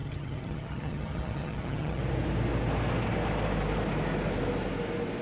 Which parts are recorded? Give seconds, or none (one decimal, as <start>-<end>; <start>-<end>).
2.0-5.2